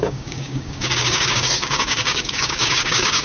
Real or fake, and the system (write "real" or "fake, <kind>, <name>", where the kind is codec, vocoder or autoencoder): fake, codec, DAC